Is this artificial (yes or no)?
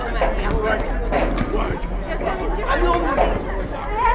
no